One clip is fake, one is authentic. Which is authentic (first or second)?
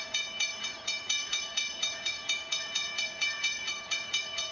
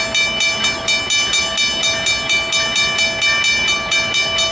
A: second